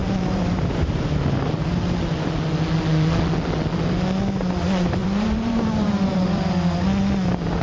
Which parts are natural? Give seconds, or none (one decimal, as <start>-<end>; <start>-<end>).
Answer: 1.1-5.0; 6.5-7.6